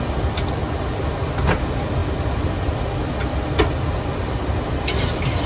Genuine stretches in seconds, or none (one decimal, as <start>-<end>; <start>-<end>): 0.0-5.5